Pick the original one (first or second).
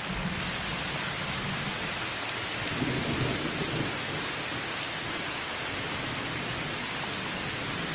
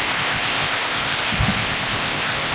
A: first